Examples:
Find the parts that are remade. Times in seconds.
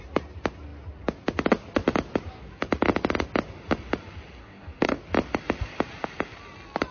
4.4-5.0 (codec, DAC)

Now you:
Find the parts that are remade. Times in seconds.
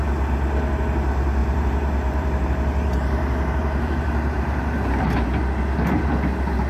1.4-5.4 (vocoder, BigVGAN v2)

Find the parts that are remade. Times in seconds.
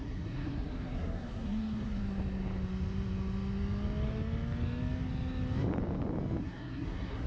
0.0-2.0 (codec, SNAC); 6.4-7.3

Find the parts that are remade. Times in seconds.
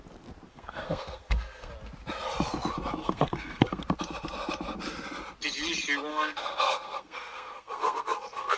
0.5-1.7 (codec, SNAC); 3.0-3.8; 6.1-8.6